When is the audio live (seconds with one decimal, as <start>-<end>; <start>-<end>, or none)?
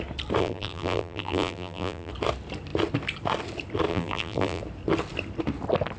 0.0-0.4; 2.1-3.9; 4.6-6.0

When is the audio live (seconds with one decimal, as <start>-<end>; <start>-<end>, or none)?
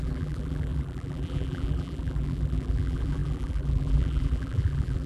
none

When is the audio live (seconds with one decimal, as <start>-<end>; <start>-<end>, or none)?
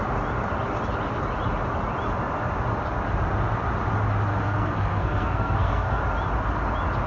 0.0-4.3; 6.0-7.1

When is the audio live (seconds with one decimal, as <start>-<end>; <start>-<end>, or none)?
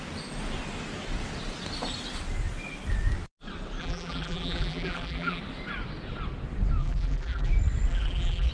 0.0-3.8; 5.4-6.8; 7.5-7.9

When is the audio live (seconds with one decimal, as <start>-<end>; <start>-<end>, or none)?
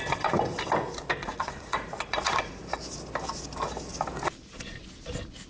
0.0-1.2; 2.6-5.5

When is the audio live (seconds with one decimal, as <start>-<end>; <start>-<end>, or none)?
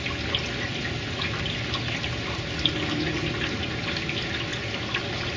0.0-5.4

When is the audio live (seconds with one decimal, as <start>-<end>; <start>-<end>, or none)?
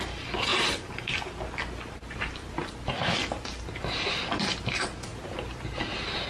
0.0-6.3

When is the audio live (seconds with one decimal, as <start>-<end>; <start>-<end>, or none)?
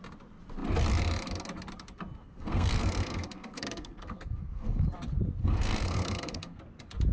0.0-2.2; 4.8-5.4; 6.6-7.1